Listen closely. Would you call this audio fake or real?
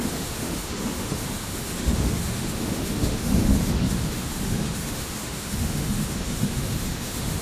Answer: fake